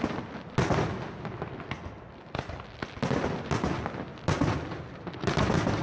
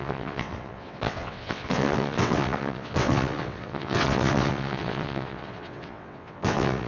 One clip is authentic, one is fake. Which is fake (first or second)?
second